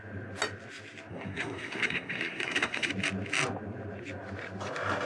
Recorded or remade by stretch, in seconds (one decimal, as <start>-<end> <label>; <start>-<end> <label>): 0.0-1.1 recorded; 1.1-2.9 remade; 2.9-5.1 recorded

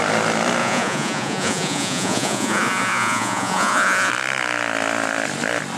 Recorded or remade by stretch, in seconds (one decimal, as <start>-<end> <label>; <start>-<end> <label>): 0.0-0.6 recorded; 0.6-4.1 remade; 4.1-5.8 recorded

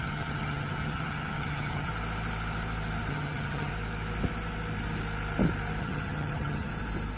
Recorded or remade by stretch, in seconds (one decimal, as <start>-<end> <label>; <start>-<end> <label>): 0.0-1.9 remade; 1.9-3.1 recorded; 3.1-3.7 remade; 3.7-5.8 recorded; 5.8-6.7 remade; 6.7-7.2 recorded

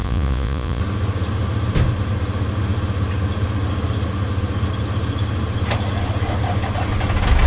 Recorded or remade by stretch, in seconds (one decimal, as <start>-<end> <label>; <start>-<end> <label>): 0.0-0.8 remade; 0.8-7.5 recorded